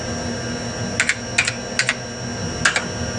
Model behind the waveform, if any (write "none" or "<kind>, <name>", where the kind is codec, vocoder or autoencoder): none